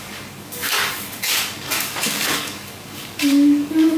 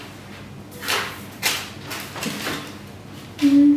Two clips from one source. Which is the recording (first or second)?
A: second